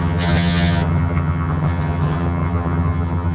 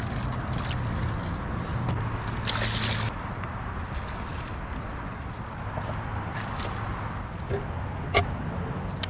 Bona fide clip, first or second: second